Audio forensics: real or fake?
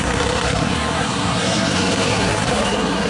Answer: fake